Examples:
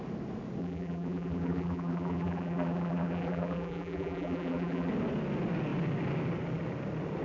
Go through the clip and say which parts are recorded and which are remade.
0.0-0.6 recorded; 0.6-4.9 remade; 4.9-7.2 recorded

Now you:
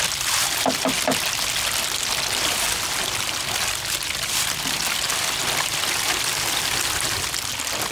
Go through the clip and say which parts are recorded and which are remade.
0.0-5.4 recorded; 5.4-7.5 remade; 7.5-7.9 recorded

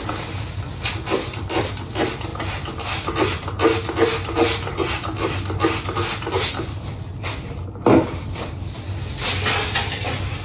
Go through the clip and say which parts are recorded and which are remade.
0.0-10.4 recorded

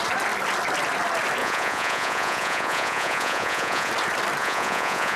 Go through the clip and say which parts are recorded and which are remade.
0.0-1.4 recorded; 1.4-3.9 remade; 3.9-4.4 recorded; 4.4-5.2 remade

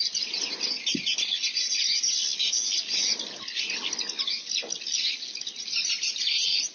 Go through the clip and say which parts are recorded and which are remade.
0.0-6.7 recorded

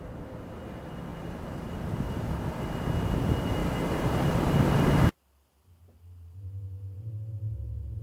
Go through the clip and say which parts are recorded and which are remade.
0.0-3.6 recorded; 3.6-4.4 remade; 4.4-8.0 recorded

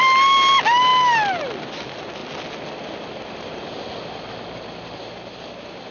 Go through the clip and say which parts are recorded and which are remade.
0.0-5.9 recorded

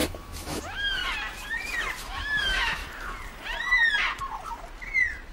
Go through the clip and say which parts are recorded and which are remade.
0.0-1.0 remade; 1.0-2.0 recorded; 2.0-2.8 remade; 2.8-5.3 recorded